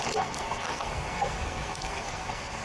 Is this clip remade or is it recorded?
remade